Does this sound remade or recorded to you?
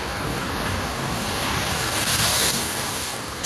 remade